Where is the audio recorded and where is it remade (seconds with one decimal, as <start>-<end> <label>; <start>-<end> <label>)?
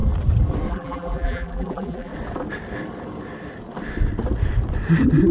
0.0-0.7 recorded; 0.7-2.1 remade; 2.1-5.3 recorded